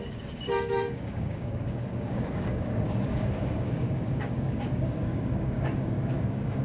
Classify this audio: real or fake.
fake